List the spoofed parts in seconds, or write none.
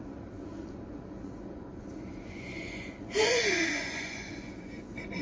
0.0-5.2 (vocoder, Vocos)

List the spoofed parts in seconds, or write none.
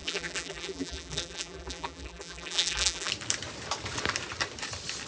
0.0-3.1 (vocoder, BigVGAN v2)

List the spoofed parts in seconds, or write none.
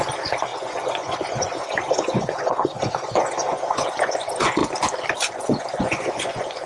0.0-4.6 (vocoder, Vocos); 5.3-6.7